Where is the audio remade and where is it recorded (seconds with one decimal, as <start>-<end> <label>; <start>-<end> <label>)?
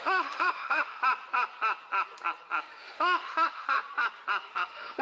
0.0-1.0 remade; 1.0-2.6 recorded; 2.6-3.8 remade; 3.8-4.4 recorded; 4.4-5.0 remade